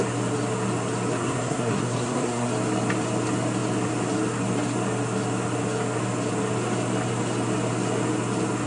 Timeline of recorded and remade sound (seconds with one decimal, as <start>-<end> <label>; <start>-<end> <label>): 0.0-1.1 recorded; 1.1-2.5 remade; 2.5-8.7 recorded